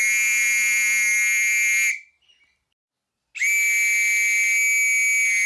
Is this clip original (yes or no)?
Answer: yes